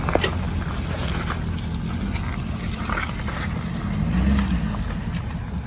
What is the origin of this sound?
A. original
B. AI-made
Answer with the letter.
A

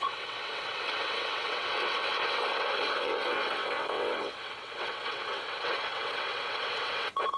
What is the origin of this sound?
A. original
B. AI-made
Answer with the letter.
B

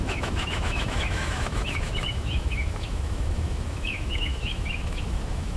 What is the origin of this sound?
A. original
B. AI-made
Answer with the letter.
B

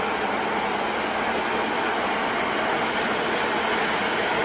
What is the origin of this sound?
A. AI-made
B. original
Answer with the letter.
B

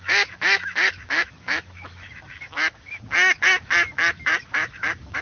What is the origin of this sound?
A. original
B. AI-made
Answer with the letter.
B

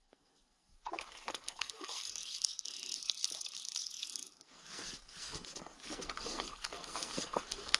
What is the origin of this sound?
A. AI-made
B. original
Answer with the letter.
A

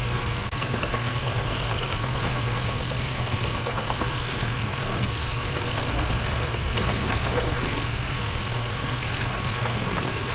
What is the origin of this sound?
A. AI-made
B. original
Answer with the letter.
A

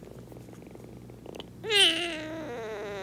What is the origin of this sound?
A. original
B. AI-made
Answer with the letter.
A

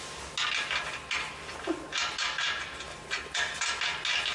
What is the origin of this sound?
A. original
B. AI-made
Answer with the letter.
A